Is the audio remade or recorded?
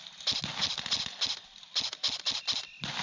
recorded